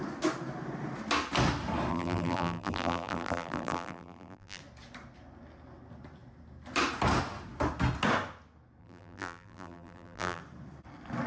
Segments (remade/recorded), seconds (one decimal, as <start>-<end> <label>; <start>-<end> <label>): 0.0-1.9 recorded; 1.9-4.6 remade; 4.6-8.8 recorded; 8.8-10.4 remade; 10.4-11.3 recorded